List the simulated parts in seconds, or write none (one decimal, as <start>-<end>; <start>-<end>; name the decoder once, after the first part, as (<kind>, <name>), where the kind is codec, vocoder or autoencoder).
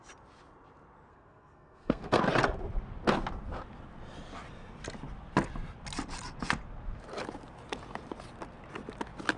1.1-2.2 (codec, SNAC)